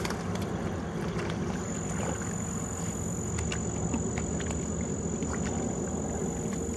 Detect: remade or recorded recorded